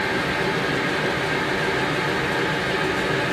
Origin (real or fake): real